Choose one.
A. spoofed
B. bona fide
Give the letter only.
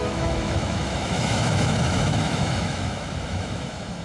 A